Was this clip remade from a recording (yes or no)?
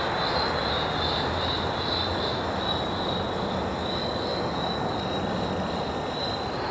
no